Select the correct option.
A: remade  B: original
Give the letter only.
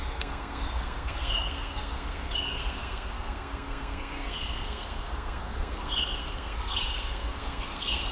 A